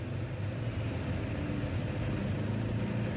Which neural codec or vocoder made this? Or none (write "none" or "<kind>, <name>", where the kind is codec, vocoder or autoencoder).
none